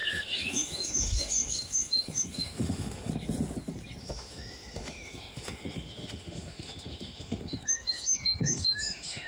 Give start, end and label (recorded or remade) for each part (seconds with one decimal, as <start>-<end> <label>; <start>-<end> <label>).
0.0-3.1 remade; 3.1-4.0 recorded; 4.0-9.3 remade